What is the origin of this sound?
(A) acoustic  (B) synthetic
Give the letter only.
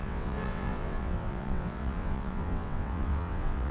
B